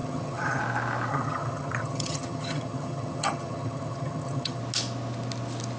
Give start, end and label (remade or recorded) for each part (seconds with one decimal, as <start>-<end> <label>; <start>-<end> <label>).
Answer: 0.0-0.6 remade; 0.6-1.1 recorded; 1.1-4.6 remade; 4.6-5.8 recorded